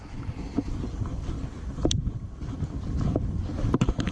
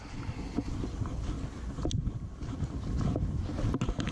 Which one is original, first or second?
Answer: second